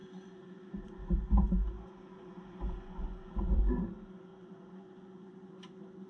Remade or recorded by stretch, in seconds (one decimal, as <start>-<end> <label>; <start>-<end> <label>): 0.0-3.7 remade; 3.7-4.3 recorded; 4.3-5.5 remade; 5.5-6.1 recorded